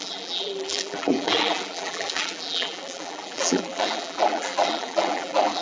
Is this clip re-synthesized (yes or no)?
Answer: yes